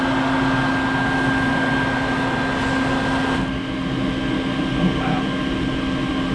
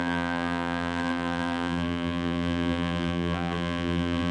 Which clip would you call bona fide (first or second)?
first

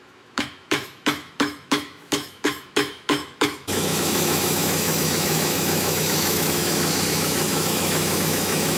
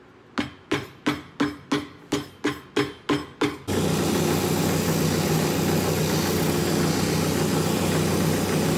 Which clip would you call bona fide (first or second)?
second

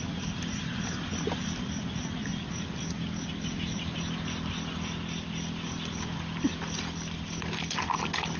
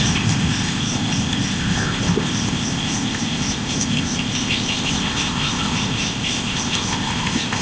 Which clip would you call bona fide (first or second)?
first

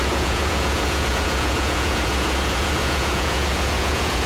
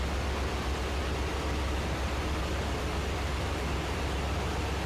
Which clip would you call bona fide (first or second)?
second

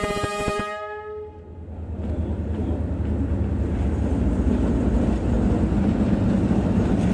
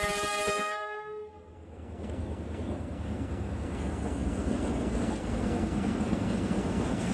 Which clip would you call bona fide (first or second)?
first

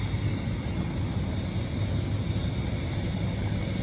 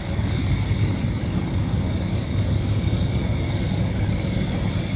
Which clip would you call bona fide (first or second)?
first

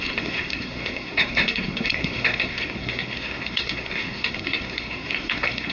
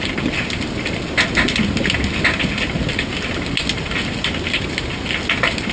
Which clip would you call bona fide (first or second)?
second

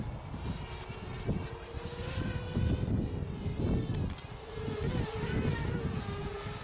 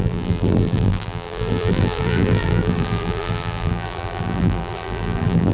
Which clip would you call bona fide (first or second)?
first